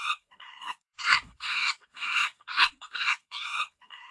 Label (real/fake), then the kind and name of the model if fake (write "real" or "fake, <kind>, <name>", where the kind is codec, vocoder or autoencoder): fake, codec, SNAC